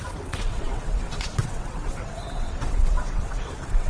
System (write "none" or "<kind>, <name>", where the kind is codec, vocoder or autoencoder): vocoder, WaveNeXt